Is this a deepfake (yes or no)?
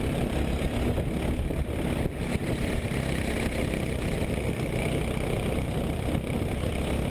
no